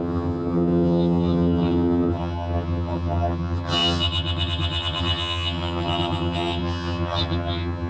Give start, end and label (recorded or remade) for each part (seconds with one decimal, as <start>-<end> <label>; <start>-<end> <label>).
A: 0.0-7.9 remade